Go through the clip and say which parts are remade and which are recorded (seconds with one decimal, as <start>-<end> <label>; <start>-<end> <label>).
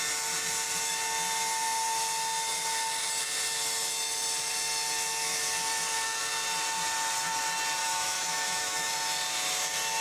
0.0-7.8 recorded; 7.8-8.9 remade; 8.9-10.0 recorded